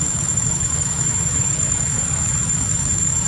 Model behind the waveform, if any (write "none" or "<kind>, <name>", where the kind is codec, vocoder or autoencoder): autoencoder, DAC-VAE